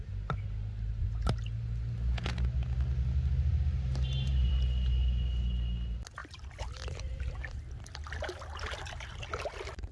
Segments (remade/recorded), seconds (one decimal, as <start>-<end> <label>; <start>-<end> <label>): 0.0-3.5 recorded; 3.5-4.5 remade; 4.5-9.9 recorded